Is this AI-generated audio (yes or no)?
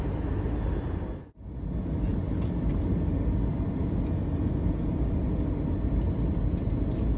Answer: no